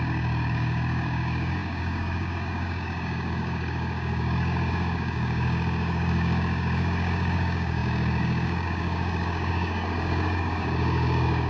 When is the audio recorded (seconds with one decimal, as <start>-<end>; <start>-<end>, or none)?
none